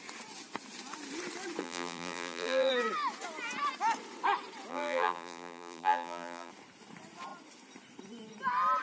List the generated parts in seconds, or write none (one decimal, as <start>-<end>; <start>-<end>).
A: 1.6-2.7; 4.7-6.5